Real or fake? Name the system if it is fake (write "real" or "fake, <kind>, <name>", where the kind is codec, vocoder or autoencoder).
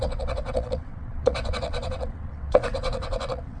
fake, vocoder, WaveNeXt